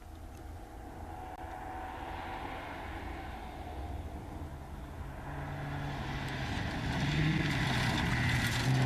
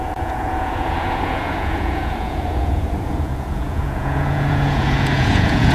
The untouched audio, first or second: first